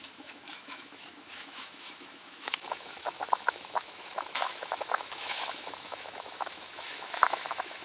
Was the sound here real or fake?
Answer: fake